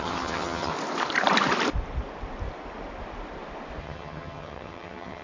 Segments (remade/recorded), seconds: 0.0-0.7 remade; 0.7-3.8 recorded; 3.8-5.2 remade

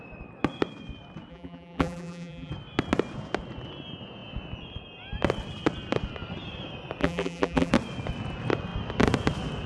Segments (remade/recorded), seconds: 0.0-1.3 recorded; 1.3-2.5 remade; 2.5-7.0 recorded; 7.0-7.7 remade; 7.7-9.7 recorded

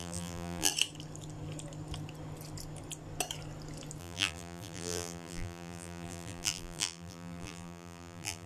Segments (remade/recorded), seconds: 0.0-0.7 remade; 0.7-4.0 recorded; 4.0-8.5 remade

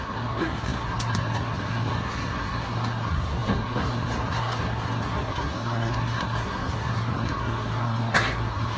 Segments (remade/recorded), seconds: 0.0-8.8 remade